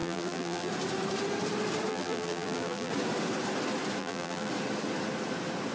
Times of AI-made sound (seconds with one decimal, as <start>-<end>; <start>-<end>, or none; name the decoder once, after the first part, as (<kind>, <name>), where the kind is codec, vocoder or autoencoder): 0.0-0.7 (vocoder, BigVGAN v2); 1.9-2.9; 4.0-4.5